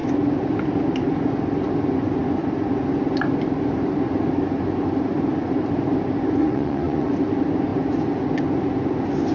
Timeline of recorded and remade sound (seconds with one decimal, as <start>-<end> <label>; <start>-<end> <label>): 0.0-6.4 recorded; 6.4-7.1 remade; 7.1-9.3 recorded